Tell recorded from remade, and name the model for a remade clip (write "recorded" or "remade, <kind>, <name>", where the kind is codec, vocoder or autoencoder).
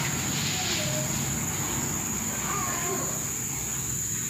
recorded